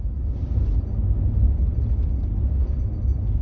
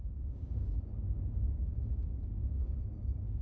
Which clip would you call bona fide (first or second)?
first